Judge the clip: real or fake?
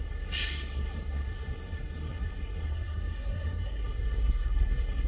fake